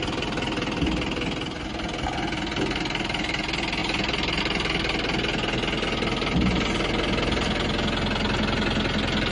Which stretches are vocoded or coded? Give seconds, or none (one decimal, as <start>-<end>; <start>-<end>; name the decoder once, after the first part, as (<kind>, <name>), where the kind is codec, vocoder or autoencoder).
none